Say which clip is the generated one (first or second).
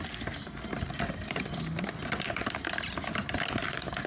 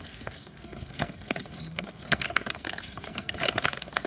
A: second